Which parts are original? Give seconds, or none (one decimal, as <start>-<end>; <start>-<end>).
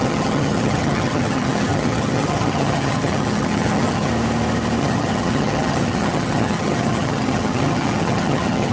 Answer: 4.1-4.8